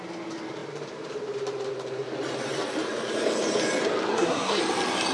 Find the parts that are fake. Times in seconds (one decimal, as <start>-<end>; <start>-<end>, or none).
4.1-4.6